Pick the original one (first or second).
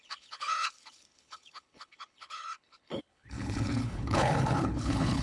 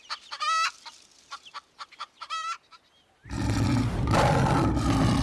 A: second